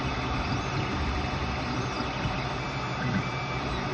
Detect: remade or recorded recorded